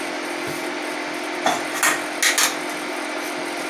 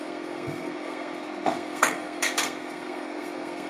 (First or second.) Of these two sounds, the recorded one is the first